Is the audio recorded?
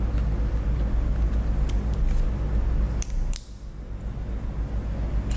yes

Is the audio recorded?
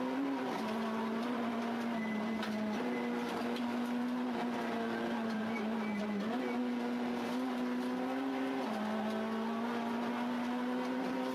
yes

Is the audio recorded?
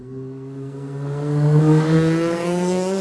no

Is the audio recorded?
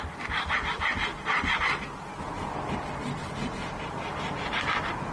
yes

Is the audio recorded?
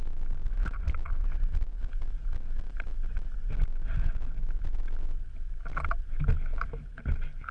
yes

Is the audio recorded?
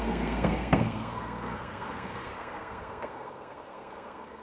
no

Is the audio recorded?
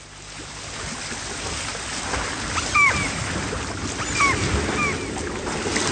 yes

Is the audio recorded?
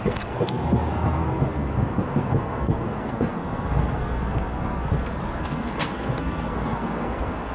no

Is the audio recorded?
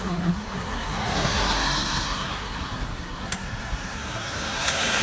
no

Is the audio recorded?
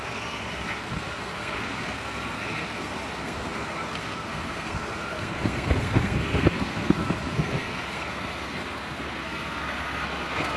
no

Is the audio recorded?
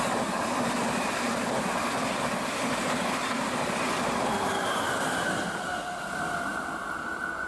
yes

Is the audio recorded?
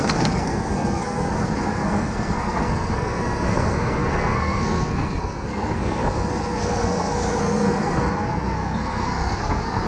no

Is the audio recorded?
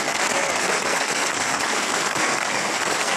no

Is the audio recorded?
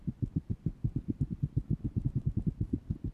yes